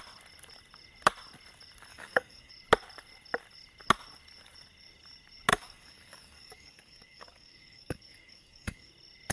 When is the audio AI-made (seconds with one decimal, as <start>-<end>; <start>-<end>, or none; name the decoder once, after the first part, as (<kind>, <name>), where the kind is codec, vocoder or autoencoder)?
1.9-2.5 (codec, DAC); 5.5-8.9